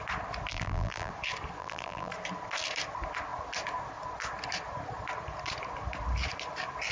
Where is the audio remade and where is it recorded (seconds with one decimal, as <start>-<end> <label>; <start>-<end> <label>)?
0.0-0.5 recorded; 0.5-1.1 remade; 1.1-1.6 recorded; 1.6-2.1 remade; 2.1-6.9 recorded